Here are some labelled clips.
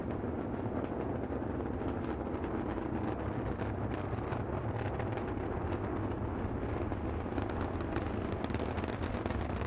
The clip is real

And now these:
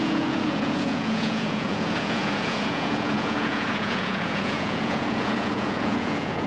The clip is fake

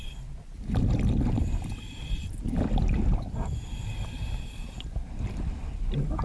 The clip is real